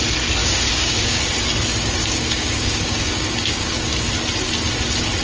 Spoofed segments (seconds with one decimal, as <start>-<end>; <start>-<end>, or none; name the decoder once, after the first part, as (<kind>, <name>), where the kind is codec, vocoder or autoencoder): 0.4-1.3 (codec, DAC); 2.0-4.1